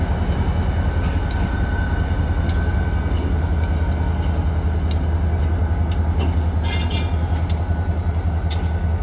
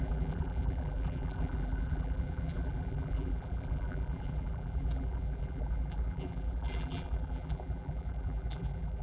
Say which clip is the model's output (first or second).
second